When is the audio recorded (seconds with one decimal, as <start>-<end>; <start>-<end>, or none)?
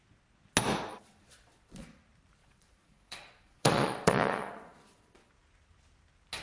0.0-0.9; 2.0-2.4; 5.3-6.4